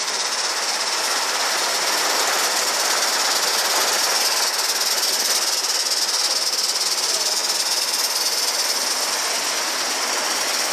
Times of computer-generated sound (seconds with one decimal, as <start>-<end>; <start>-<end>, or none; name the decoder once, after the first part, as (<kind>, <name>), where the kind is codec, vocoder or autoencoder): none